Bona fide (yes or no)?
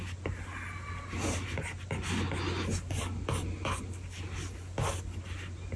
yes